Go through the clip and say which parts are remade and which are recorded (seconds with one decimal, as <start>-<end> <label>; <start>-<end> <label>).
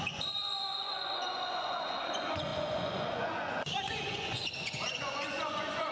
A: 0.0-5.9 remade